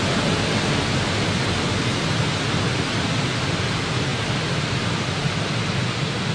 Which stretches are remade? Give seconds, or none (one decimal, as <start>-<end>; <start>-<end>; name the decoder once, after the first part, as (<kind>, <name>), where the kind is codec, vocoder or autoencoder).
none